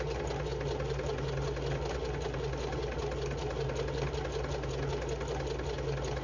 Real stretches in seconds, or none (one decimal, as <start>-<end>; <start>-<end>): 0.0-6.2